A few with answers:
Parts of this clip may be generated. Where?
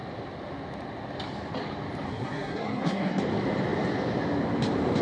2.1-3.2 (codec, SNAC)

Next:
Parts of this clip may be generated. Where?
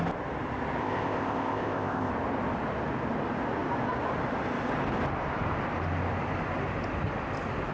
0.8-2.1 (codec, ZipCodec)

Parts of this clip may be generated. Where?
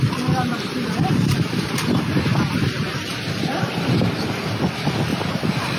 0.5-4.0 (vocoder, BigVGAN v2); 5.1-5.8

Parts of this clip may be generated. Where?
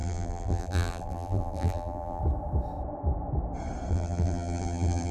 0.0-2.2 (vocoder, BigVGAN v2); 3.9-5.1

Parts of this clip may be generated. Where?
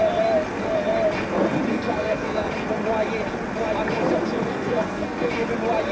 1.7-2.5 (codec, SNAC); 4.5-5.3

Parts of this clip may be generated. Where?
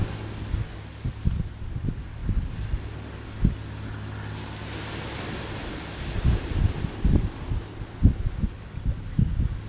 none